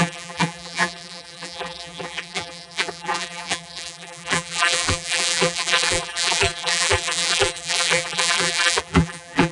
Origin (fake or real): fake